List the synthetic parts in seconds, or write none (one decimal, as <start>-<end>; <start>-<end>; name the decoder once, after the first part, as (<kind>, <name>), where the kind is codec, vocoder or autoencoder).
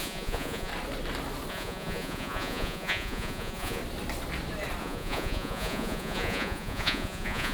0.0-0.7 (vocoder, Vocos); 1.5-3.8; 4.8-7.5